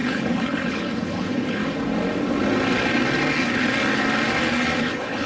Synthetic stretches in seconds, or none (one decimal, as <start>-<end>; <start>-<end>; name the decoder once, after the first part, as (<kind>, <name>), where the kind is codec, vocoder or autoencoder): 0.0-1.6 (codec, HILCodec); 4.8-5.3